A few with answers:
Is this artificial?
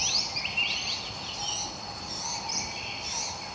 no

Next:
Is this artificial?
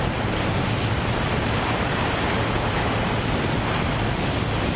no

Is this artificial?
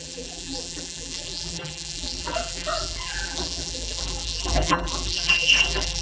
yes